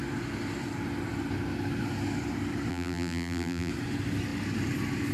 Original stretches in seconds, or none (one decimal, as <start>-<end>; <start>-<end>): 0.0-2.7; 3.7-5.1